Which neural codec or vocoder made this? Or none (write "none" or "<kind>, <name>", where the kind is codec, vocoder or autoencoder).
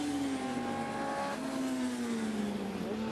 none